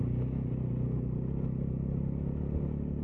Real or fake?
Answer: real